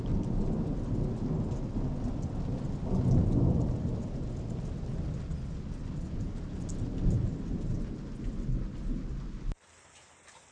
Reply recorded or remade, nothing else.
recorded